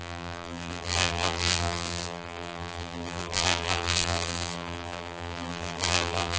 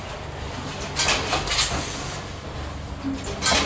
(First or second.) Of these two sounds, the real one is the second